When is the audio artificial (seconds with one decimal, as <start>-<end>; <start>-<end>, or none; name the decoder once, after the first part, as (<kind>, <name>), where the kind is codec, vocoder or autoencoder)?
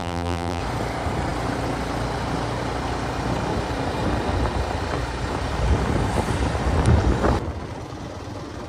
0.0-0.6 (vocoder, BigVGAN v2)